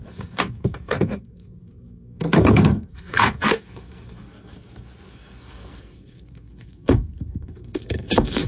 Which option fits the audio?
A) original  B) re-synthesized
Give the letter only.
B